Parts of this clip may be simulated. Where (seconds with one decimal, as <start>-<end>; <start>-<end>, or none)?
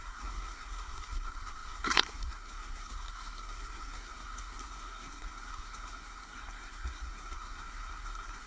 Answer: 0.0-8.5